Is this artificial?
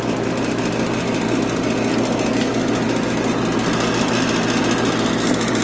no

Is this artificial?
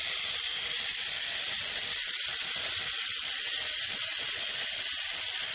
no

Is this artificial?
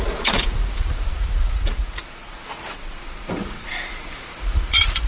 yes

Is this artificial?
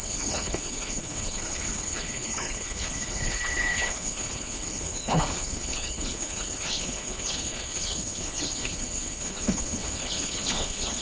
yes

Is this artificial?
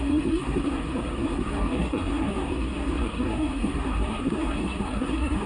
yes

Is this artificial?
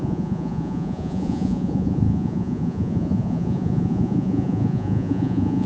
yes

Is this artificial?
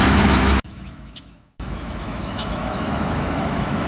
yes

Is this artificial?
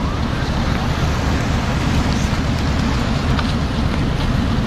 no